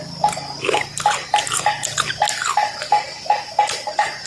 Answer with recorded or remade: recorded